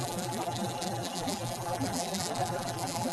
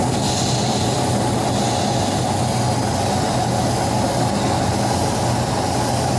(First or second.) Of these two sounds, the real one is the second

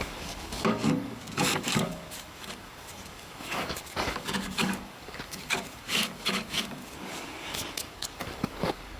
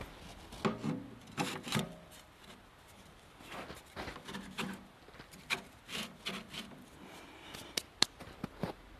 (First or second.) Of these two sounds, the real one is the second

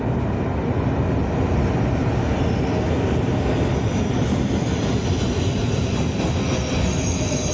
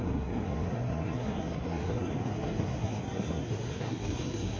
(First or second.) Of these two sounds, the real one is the first